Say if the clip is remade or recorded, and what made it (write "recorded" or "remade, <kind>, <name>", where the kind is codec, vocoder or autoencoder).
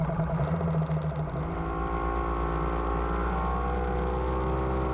recorded